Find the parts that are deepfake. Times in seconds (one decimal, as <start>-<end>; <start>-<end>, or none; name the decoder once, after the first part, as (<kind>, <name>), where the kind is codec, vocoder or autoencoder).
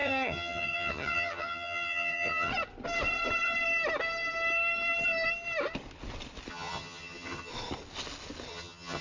0.0-2.5 (vocoder, HiFi-GAN); 6.5-7.5; 8.5-9.0